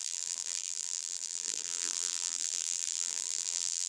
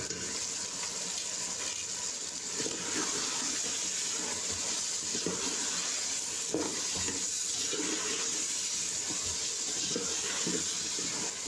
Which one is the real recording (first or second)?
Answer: second